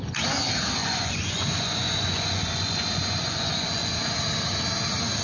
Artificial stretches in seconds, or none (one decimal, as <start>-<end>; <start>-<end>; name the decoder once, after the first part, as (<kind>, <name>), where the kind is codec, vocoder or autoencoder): 0.8-3.9 (vocoder, Vocos)